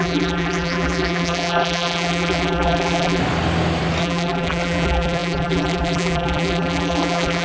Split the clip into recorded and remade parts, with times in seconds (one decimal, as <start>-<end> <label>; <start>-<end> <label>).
0.0-3.2 remade; 3.2-4.0 recorded; 4.0-7.4 remade